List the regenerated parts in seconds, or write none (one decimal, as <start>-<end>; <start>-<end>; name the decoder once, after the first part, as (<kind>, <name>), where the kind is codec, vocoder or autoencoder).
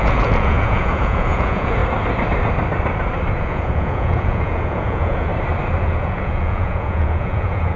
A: 0.0-1.8 (vocoder, Vocos); 3.4-5.3; 5.8-7.8